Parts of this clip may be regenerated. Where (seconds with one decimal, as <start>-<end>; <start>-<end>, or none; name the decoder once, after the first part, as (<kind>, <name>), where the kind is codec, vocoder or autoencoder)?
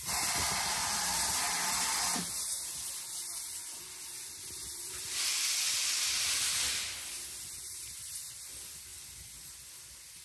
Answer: none